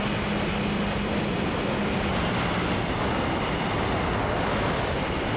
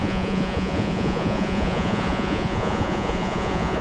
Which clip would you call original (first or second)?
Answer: first